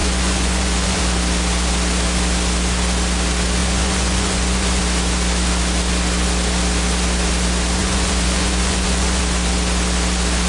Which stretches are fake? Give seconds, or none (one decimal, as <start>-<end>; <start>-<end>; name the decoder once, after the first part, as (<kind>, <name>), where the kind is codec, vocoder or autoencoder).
0.0-1.0 (vocoder, Vocos); 3.6-4.8; 7.8-9.2